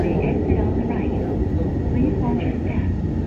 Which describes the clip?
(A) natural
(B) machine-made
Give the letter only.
A